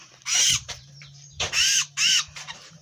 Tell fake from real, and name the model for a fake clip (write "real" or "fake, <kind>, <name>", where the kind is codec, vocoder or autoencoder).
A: fake, vocoder, BigVGAN v2